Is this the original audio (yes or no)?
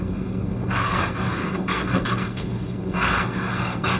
no